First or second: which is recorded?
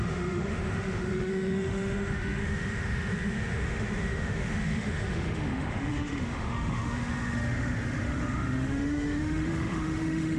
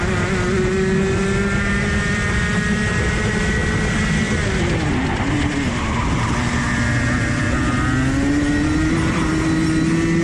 second